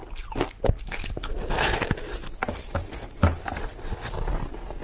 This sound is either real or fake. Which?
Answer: real